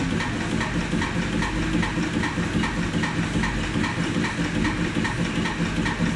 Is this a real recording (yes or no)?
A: yes